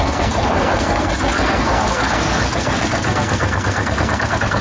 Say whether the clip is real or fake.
fake